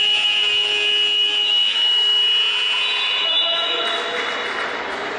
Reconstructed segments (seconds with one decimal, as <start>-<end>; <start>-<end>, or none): 1.4-2.2; 3.2-3.8

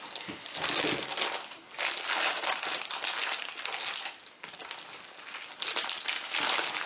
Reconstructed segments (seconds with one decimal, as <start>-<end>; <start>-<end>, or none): none

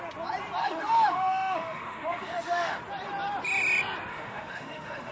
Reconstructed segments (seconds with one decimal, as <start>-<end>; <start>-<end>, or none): 0.6-2.8; 4.1-5.1

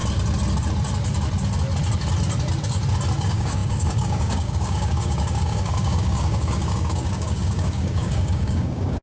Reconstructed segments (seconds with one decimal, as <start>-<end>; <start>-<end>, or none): 3.2-9.0

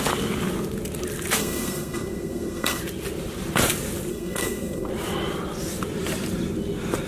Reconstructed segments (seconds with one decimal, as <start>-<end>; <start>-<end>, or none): 1.4-2.8; 4.1-4.9

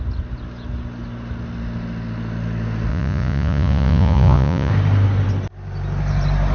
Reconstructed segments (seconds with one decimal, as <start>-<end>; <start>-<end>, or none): 2.9-4.7